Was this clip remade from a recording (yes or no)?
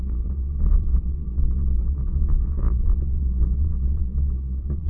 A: yes